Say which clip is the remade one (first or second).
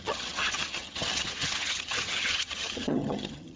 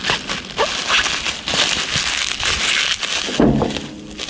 first